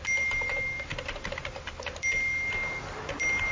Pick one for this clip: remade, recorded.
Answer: recorded